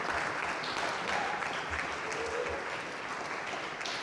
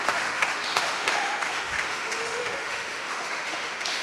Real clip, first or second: first